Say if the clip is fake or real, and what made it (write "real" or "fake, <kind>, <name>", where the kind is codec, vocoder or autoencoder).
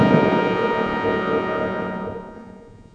fake, vocoder, Vocos